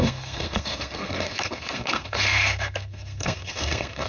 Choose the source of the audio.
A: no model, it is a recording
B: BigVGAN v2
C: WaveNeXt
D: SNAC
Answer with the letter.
D